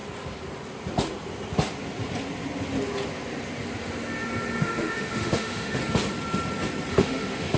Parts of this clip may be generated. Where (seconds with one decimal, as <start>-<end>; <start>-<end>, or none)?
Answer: 4.6-5.8; 6.9-7.6